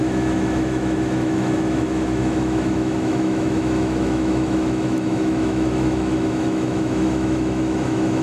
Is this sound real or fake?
fake